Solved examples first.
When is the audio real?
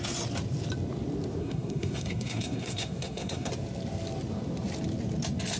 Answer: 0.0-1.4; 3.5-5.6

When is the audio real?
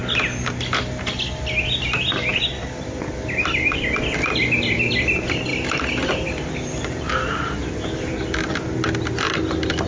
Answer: 0.0-2.3; 3.0-5.5; 7.0-9.9